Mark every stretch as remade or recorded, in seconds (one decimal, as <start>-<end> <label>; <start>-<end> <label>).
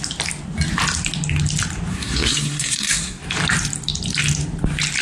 0.0-1.9 recorded; 1.9-3.2 remade; 3.2-5.0 recorded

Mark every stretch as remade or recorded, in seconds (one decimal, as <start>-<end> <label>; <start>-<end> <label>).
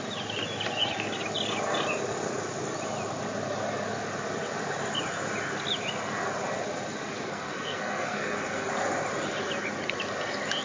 0.0-7.3 recorded; 7.3-8.7 remade; 8.7-10.6 recorded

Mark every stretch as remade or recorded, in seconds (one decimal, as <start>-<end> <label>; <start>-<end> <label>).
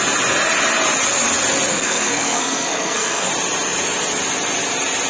0.0-1.7 recorded; 1.7-3.3 remade; 3.3-5.1 recorded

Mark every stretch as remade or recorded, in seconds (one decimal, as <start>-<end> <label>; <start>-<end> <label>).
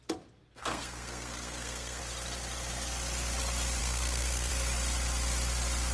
0.0-0.5 recorded; 0.5-2.0 remade; 2.0-3.8 recorded; 3.8-4.5 remade; 4.5-5.9 recorded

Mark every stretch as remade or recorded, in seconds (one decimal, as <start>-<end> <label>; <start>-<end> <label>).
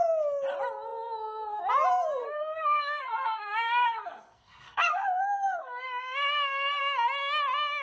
0.0-2.2 recorded; 2.2-6.8 remade; 6.8-7.8 recorded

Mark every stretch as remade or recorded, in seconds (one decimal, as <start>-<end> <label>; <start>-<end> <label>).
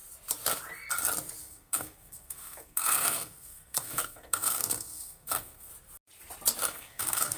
0.0-1.4 recorded; 1.4-5.7 remade; 5.7-6.6 recorded; 6.6-7.4 remade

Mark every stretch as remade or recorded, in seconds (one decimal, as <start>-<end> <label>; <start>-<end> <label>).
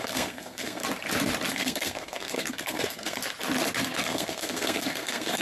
0.0-0.8 remade; 0.8-1.5 recorded; 1.5-3.2 remade; 3.2-3.8 recorded; 3.8-5.4 remade